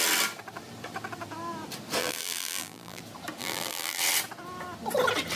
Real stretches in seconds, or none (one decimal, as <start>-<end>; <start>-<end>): 0.0-2.0; 3.0-3.4; 4.0-5.4